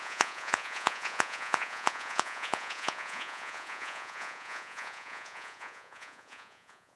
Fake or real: fake